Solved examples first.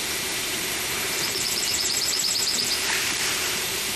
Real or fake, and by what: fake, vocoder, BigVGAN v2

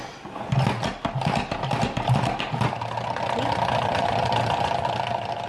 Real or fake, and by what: real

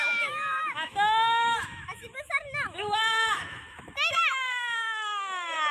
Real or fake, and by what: fake, autoencoder, DAC-VAE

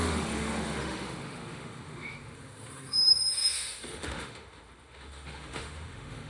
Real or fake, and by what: fake, autoencoder, DAC-VAE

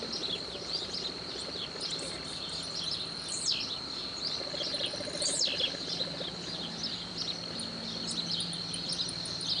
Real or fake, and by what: real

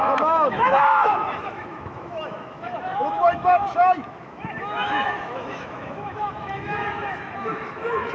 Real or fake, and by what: fake, autoencoder, DAC-VAE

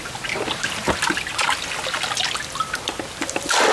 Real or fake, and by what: real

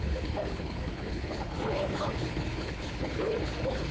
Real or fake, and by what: fake, codec, HILCodec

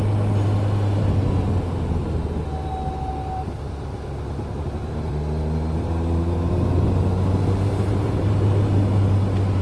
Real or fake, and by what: real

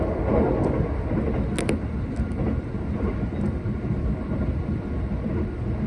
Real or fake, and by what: real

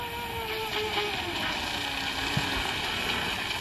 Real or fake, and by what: real